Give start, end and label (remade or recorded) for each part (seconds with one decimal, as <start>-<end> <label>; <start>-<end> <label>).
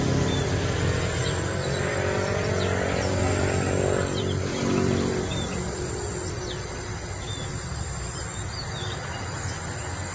0.0-10.1 remade